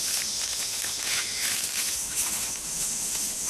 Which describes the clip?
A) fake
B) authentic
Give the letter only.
A